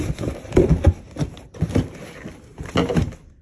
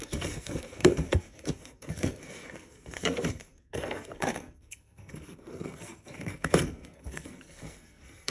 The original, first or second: first